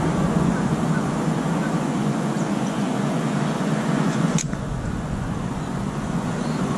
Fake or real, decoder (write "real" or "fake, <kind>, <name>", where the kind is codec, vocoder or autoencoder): fake, vocoder, Vocos